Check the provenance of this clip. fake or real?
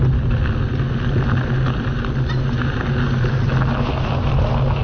real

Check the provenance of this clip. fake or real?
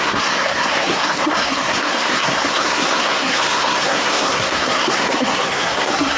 fake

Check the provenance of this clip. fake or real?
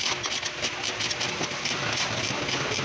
real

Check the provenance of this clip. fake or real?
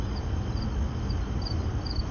real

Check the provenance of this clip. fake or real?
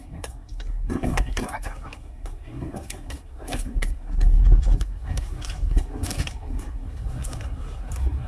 fake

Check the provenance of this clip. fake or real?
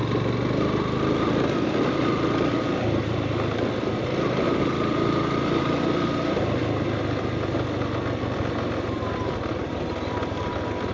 real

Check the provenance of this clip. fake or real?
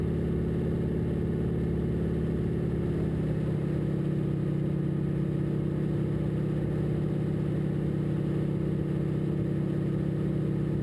real